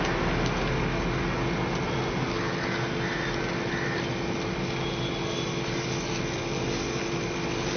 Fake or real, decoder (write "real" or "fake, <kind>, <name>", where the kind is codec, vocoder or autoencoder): real